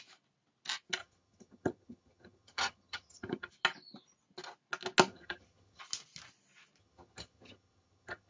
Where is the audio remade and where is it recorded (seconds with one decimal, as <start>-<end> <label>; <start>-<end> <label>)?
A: 0.0-1.0 recorded; 1.0-3.5 remade; 3.5-5.1 recorded; 5.1-5.8 remade; 5.8-6.8 recorded; 6.8-8.3 remade